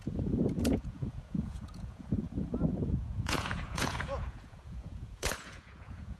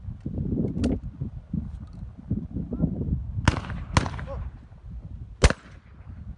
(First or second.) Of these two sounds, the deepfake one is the first